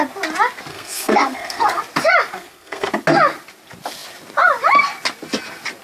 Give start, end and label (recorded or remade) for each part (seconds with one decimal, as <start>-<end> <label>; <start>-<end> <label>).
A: 0.0-0.7 recorded; 0.7-1.8 remade; 1.8-2.3 recorded; 2.3-2.9 remade; 2.9-5.8 recorded

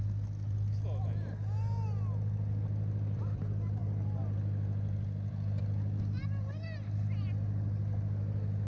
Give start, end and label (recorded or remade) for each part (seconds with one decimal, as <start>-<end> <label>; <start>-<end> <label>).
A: 0.0-8.7 recorded

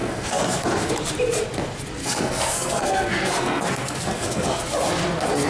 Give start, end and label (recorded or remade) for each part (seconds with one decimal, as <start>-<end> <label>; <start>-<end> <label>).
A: 0.0-0.9 remade; 0.9-2.0 recorded; 2.0-4.6 remade; 4.6-5.5 recorded

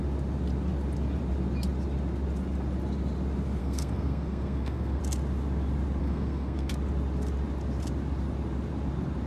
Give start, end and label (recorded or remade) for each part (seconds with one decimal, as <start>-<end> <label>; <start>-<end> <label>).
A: 0.0-3.6 recorded; 3.6-5.0 remade; 5.0-6.0 recorded; 6.0-6.7 remade; 6.7-9.3 recorded

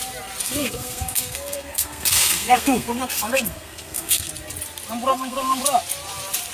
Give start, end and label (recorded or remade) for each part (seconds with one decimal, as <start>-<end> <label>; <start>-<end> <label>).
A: 0.0-0.4 recorded; 0.4-4.3 remade; 4.3-5.1 recorded; 5.1-5.6 remade; 5.6-6.5 recorded